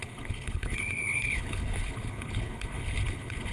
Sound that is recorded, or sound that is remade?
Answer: remade